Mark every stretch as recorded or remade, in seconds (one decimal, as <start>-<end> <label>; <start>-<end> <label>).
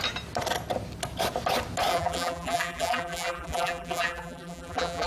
0.0-1.9 recorded; 1.9-5.1 remade